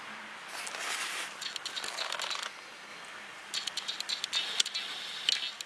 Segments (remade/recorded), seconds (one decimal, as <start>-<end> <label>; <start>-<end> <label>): 0.0-5.7 recorded